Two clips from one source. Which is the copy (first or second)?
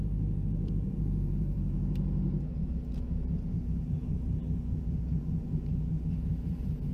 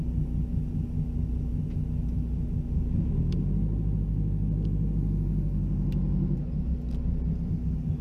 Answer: first